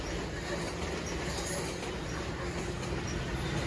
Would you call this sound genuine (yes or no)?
yes